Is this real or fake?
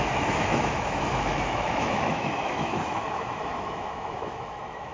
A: fake